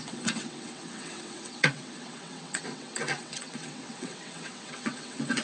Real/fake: fake